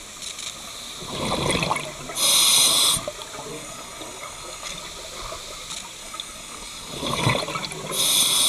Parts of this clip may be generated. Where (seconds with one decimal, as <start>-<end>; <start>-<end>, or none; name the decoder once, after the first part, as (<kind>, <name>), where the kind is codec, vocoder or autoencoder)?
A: 3.5-4.8 (codec, DAC); 6.0-7.4